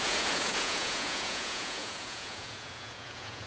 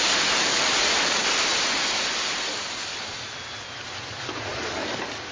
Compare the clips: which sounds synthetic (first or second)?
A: first